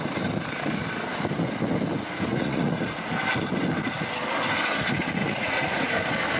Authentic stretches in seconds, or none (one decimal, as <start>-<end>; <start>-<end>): 0.0-2.3; 3.1-5.2; 5.9-6.4